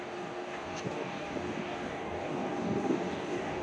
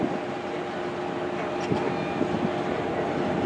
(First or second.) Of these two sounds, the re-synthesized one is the first